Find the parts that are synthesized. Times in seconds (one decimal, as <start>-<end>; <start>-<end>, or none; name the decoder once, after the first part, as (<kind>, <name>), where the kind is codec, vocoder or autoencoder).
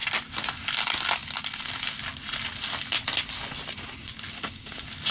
0.0-0.7 (vocoder, BigVGAN v2)